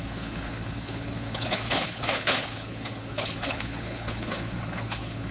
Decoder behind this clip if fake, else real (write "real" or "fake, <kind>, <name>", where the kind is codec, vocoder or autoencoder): fake, codec, HILCodec